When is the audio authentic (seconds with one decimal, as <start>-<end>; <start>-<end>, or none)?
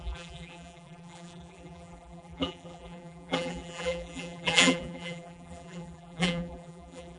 none